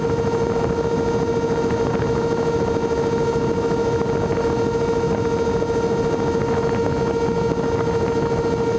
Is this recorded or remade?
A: recorded